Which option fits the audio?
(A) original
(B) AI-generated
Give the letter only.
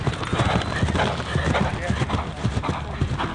A